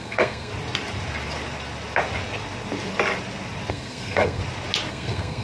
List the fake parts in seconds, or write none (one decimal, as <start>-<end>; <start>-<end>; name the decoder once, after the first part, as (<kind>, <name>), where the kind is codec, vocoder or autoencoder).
0.0-0.5 (codec, SNAC); 3.7-4.4; 4.9-5.4